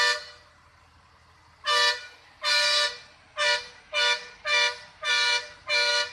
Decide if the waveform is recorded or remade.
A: recorded